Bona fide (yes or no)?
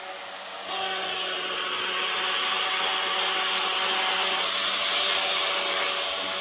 yes